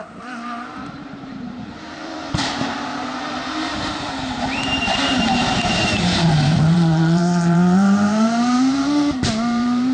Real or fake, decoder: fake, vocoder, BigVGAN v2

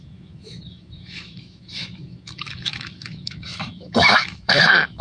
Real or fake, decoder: fake, autoencoder, DAC-VAE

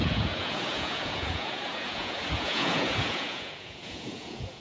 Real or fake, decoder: fake, vocoder, Vocos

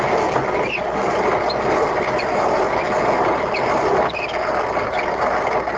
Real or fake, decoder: real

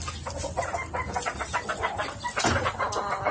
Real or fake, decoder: real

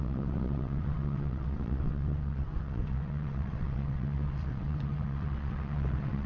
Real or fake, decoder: fake, vocoder, WaveNeXt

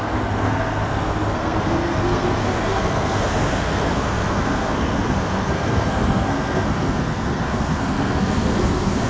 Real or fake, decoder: fake, codec, SNAC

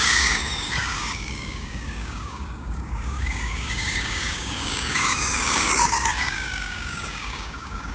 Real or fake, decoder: fake, codec, DAC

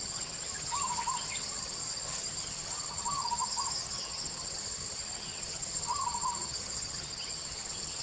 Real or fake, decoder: fake, vocoder, HiFi-GAN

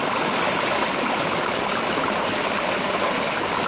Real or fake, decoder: real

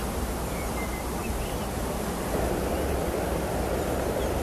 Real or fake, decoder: real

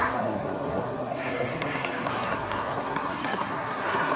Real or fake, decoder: fake, codec, SNAC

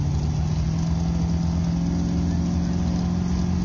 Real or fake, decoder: real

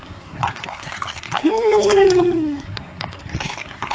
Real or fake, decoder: fake, codec, SNAC